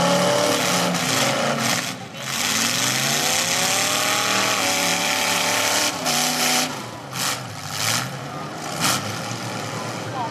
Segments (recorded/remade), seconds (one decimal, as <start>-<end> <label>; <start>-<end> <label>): 0.0-4.9 recorded; 4.9-7.5 remade; 7.5-10.3 recorded